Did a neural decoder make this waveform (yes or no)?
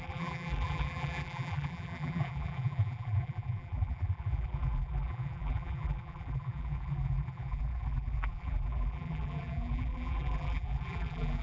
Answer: yes